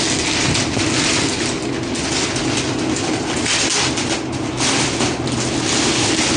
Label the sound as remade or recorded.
recorded